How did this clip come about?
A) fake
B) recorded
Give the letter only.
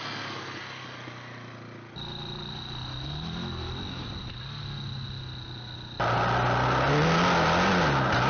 B